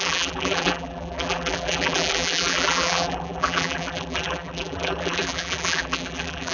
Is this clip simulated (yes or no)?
yes